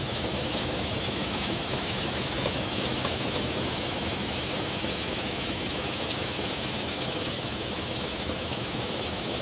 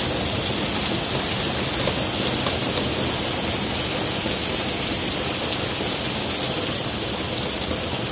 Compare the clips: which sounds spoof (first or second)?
first